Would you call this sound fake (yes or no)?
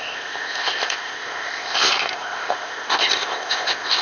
yes